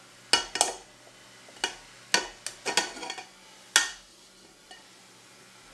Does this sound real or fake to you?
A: real